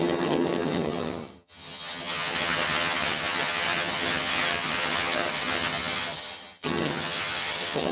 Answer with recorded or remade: remade